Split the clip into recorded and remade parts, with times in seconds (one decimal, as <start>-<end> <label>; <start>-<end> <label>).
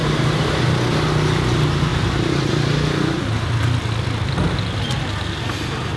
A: 0.0-0.5 remade; 0.5-1.9 recorded; 1.9-2.5 remade; 2.5-6.0 recorded